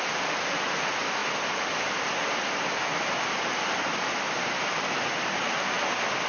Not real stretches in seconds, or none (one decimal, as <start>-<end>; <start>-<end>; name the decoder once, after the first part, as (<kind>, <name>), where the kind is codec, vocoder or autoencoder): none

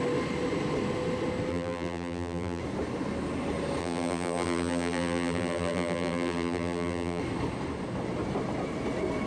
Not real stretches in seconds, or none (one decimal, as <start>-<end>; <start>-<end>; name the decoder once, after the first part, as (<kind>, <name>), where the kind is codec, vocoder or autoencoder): 1.5-2.6 (vocoder, BigVGAN v2); 3.8-7.2

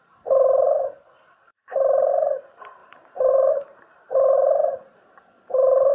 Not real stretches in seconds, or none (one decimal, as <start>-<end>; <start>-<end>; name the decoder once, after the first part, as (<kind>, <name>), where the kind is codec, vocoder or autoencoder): 0.0-5.9 (vocoder, BigVGAN v2)